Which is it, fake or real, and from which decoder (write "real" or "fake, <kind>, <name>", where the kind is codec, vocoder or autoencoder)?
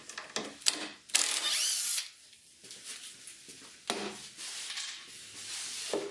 real